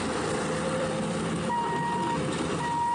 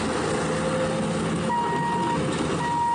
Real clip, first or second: second